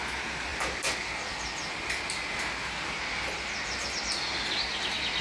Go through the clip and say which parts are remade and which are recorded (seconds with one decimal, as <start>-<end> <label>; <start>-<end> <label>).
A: 0.0-5.2 recorded